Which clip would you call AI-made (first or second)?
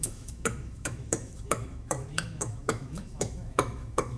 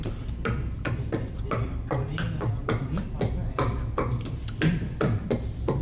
first